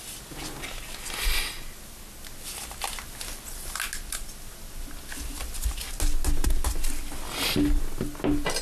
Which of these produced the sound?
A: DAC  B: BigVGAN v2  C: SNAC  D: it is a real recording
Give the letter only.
D